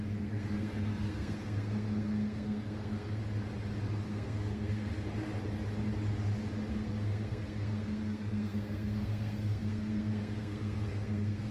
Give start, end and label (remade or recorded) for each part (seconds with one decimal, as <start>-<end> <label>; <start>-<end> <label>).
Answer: 0.0-3.2 remade; 3.2-3.8 recorded; 3.8-4.9 remade; 4.9-6.7 recorded; 6.7-11.5 remade